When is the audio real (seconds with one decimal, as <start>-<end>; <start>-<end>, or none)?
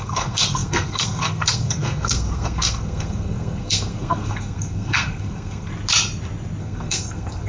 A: 5.7-6.6